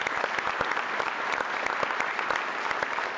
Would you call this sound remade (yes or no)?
no